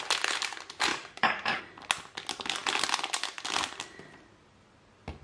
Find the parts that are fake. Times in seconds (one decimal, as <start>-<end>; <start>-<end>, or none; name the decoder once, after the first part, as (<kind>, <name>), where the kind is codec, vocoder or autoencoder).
0.9-1.6 (codec, DAC)